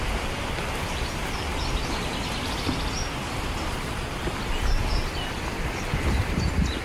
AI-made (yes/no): no